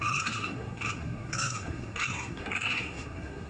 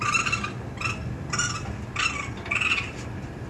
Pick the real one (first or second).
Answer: second